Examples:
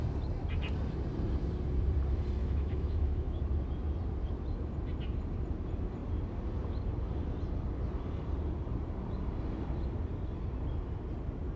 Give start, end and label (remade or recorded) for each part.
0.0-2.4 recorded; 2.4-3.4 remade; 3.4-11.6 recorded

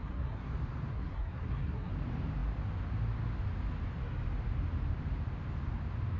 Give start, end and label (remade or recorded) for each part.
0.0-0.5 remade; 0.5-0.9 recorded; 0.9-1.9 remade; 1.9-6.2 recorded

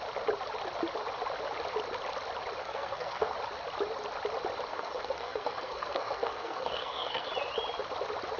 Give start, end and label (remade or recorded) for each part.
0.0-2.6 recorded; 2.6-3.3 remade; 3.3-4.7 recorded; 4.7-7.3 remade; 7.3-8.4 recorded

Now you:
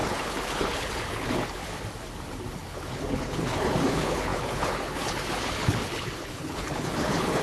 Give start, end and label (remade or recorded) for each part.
0.0-1.6 remade; 1.6-2.5 recorded; 2.5-7.4 remade

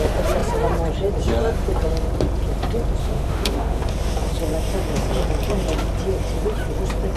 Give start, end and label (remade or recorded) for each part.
0.0-3.0 recorded; 3.0-3.8 remade; 3.8-7.2 recorded

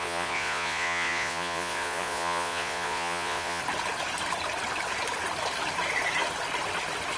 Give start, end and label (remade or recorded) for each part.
0.0-3.6 remade; 3.6-7.2 recorded